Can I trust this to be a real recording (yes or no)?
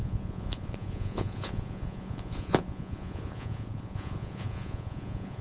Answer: no